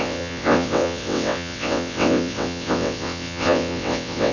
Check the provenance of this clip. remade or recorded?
remade